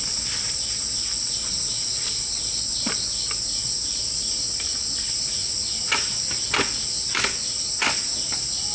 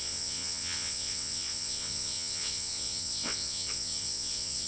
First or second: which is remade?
second